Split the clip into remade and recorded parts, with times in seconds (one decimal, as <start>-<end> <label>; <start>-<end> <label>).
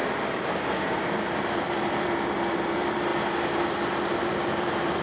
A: 0.0-1.1 recorded; 1.1-3.1 remade; 3.1-4.3 recorded; 4.3-5.0 remade